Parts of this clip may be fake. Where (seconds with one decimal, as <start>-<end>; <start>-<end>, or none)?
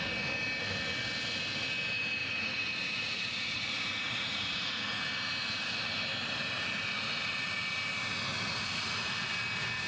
2.2-5.0